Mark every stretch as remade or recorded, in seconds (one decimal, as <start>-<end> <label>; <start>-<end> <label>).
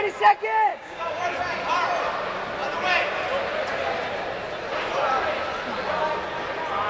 0.0-0.7 recorded; 0.7-1.2 remade; 1.2-6.9 recorded